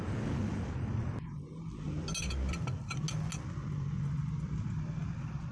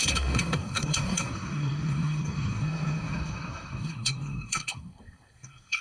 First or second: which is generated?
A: second